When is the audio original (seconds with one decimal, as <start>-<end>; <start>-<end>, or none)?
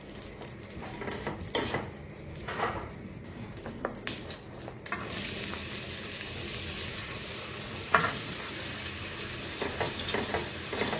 0.0-2.4; 2.9-6.9; 8.6-11.0